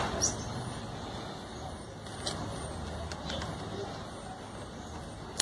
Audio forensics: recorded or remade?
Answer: recorded